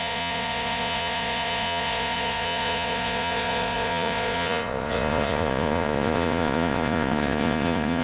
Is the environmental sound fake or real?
fake